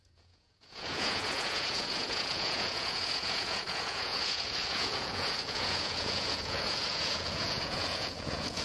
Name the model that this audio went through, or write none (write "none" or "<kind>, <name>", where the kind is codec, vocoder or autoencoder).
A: vocoder, Vocos